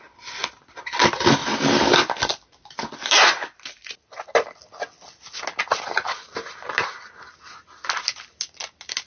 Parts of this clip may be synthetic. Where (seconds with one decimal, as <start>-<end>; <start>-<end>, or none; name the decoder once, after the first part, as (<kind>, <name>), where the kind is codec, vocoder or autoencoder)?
none